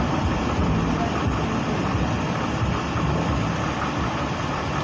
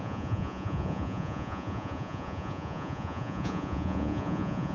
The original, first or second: first